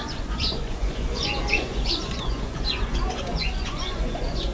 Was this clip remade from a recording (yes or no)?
yes